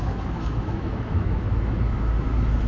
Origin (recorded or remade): remade